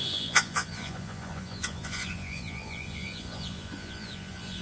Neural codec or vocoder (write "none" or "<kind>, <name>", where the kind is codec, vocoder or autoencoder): vocoder, Vocos